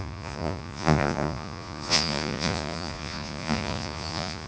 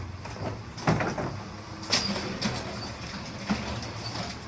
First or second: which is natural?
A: second